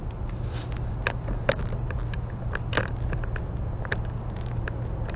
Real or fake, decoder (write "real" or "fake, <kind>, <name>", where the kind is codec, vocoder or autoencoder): real